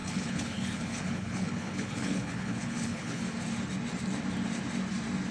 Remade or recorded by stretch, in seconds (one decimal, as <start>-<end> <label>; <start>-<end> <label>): 0.0-3.2 remade; 3.2-5.3 recorded